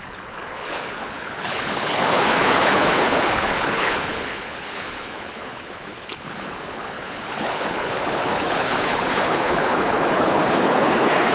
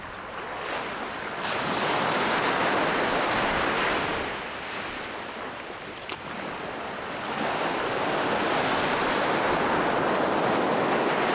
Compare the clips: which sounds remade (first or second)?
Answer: first